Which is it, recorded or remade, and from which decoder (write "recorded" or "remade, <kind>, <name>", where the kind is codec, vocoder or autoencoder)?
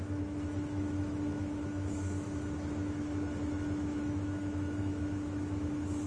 remade, autoencoder, DAC-VAE